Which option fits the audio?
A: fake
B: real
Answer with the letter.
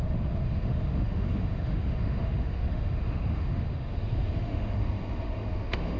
A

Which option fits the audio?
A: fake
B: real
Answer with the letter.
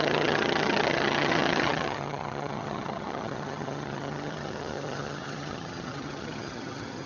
A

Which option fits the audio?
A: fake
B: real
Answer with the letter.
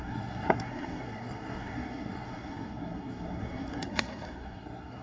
A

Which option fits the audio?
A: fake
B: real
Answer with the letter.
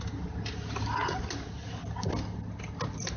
B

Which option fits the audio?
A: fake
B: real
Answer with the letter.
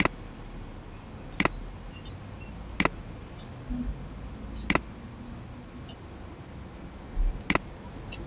B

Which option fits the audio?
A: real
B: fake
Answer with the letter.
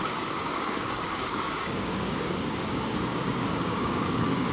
B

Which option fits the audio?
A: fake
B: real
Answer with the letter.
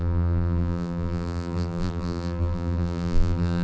A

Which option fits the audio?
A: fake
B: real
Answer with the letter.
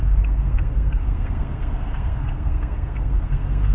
A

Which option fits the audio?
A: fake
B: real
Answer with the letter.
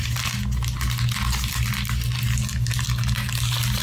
B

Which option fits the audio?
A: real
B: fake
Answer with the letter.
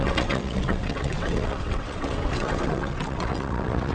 B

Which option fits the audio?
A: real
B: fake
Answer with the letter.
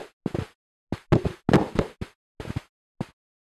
A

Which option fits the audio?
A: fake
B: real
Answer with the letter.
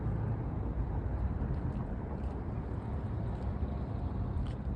B